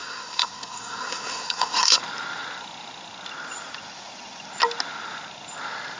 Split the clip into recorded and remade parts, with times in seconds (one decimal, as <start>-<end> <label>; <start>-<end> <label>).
0.0-2.0 remade; 2.0-6.0 recorded